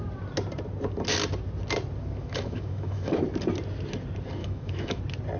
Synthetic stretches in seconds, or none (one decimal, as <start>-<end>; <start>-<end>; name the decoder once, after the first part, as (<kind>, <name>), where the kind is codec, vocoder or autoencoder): 2.2-3.2 (autoencoder, DAC-VAE); 4.4-5.0